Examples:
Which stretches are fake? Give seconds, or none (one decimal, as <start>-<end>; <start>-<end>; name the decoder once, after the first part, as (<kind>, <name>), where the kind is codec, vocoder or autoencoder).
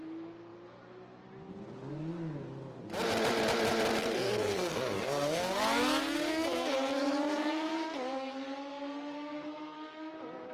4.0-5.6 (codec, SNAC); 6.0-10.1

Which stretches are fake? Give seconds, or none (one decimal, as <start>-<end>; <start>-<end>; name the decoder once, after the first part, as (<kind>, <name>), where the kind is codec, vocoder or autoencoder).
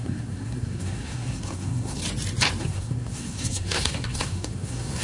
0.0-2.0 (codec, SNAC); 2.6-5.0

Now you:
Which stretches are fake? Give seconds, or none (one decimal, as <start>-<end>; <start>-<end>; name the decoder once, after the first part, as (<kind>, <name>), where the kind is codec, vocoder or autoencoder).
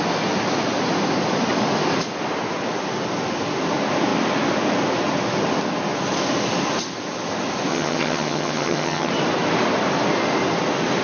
7.7-9.1 (vocoder, HiFi-GAN)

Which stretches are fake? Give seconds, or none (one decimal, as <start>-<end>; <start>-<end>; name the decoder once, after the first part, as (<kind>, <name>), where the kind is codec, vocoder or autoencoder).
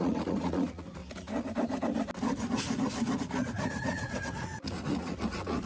0.0-1.0 (vocoder, Vocos); 3.2-5.7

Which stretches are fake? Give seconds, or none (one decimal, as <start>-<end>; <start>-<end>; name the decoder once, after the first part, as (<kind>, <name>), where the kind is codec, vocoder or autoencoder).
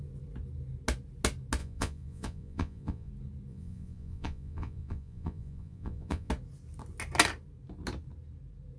1.6-3.1 (vocoder, Vocos); 3.5-6.3